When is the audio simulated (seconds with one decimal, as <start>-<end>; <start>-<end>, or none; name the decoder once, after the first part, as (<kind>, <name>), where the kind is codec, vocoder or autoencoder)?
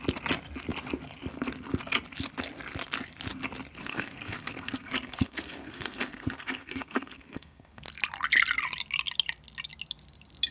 3.8-7.8 (codec, SNAC)